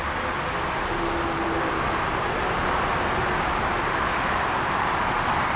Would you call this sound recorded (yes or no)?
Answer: yes